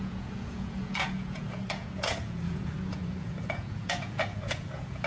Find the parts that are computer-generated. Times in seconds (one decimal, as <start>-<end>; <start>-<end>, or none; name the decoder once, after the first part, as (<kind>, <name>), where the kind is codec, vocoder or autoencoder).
0.0-5.1 (vocoder, Vocos)